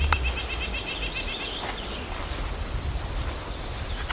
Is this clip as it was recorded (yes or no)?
yes